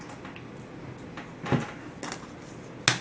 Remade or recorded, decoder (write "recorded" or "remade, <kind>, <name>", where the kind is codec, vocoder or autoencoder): recorded